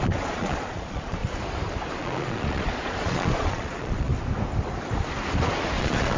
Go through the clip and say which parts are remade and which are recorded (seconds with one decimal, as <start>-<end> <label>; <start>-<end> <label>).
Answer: 0.0-1.2 remade; 1.2-1.9 recorded; 1.9-4.1 remade; 4.1-5.8 recorded; 5.8-6.2 remade